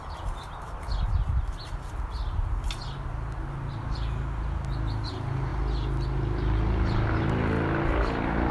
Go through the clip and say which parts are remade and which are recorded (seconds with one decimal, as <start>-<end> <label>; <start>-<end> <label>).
0.0-8.5 recorded